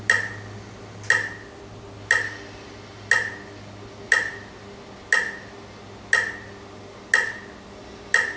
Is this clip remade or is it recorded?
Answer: recorded